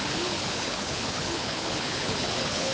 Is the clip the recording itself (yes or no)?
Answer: no